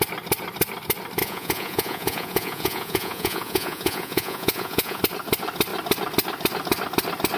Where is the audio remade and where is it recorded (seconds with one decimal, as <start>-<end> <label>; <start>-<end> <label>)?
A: 0.0-1.2 recorded; 1.2-5.0 remade; 5.0-7.4 recorded